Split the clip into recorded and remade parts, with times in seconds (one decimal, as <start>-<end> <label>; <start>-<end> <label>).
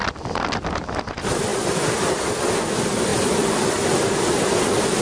0.0-1.5 recorded; 1.5-2.4 remade; 2.4-3.1 recorded; 3.1-5.0 remade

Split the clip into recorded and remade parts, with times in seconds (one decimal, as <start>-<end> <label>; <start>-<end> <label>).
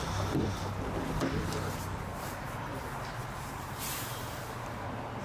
0.0-2.1 recorded; 2.1-4.8 remade; 4.8-5.2 recorded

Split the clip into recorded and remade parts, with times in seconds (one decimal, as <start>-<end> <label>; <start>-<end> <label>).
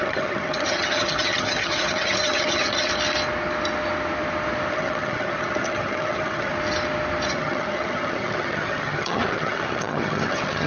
0.0-2.9 remade; 2.9-4.7 recorded; 4.7-6.5 remade; 6.5-7.3 recorded; 7.3-10.7 remade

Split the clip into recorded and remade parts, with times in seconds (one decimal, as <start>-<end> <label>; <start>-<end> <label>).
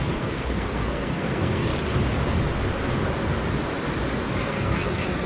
0.0-1.7 remade; 1.7-4.4 recorded; 4.4-5.3 remade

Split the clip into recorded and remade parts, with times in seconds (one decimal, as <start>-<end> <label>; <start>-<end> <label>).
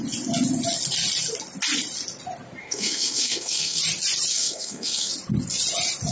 0.0-2.6 recorded; 2.6-3.8 remade; 3.8-4.3 recorded; 4.3-5.1 remade; 5.1-6.1 recorded